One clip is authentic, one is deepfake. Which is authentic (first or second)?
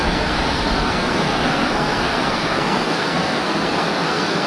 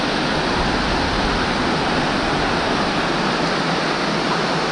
second